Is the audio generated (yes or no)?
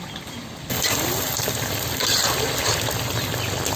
no